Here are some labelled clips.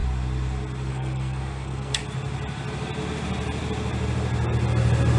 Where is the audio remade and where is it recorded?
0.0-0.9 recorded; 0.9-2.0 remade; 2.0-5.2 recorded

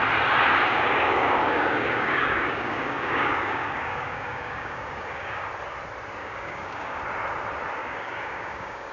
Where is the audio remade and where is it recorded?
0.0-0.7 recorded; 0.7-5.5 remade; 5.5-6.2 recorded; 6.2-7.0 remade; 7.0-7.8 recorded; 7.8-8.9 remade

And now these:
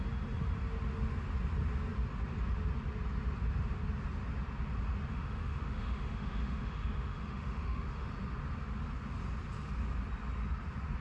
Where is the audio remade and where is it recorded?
0.0-5.1 recorded; 5.1-8.1 remade; 8.1-11.0 recorded